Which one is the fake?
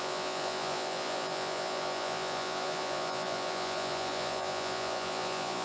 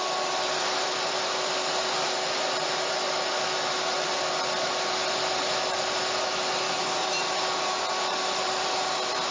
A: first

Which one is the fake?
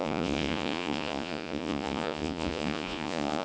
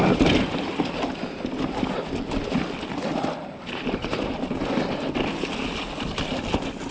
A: first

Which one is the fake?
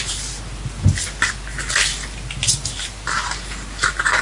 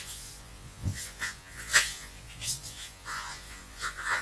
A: second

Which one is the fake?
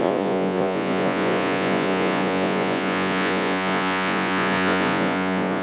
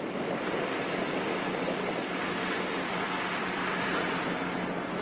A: first